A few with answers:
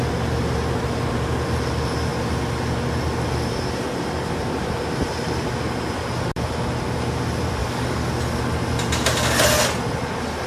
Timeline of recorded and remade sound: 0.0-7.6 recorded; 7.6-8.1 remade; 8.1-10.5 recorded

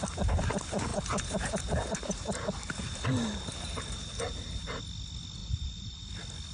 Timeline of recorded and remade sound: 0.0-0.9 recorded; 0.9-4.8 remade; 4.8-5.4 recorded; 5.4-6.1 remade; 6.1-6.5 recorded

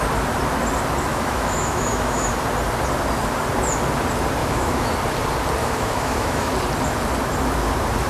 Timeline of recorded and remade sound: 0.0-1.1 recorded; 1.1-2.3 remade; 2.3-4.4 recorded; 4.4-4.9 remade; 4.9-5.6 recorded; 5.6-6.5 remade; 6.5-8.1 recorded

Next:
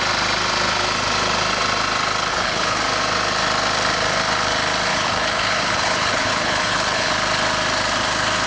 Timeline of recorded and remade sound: 0.0-2.3 recorded; 2.3-2.8 remade; 2.8-4.9 recorded; 4.9-7.1 remade; 7.1-8.5 recorded

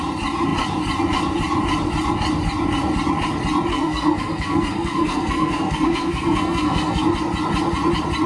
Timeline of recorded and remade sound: 0.0-3.7 recorded; 3.7-7.0 remade; 7.0-8.3 recorded

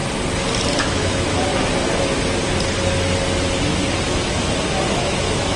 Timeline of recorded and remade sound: 0.0-0.8 recorded; 0.8-1.5 remade; 1.5-4.9 recorded; 4.9-5.6 remade

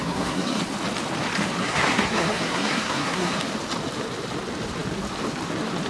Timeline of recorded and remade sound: 0.0-0.6 remade; 0.6-1.6 recorded; 1.6-3.3 remade; 3.3-5.9 recorded